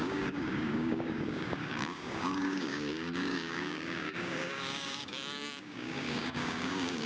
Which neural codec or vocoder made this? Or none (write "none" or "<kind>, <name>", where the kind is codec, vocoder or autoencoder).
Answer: codec, DAC